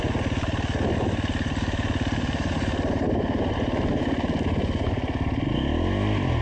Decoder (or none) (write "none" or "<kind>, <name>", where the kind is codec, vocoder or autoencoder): none